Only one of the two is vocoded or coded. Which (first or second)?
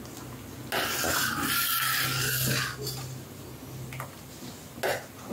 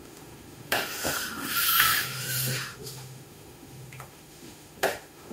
second